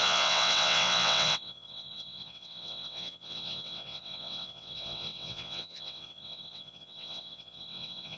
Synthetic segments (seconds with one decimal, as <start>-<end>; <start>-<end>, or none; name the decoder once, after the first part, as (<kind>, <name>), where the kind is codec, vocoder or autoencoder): 0.0-8.2 (vocoder, WaveNeXt)